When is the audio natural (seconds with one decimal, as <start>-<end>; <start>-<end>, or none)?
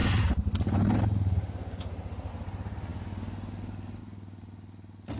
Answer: 0.0-5.2